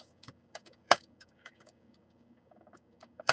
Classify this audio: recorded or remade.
remade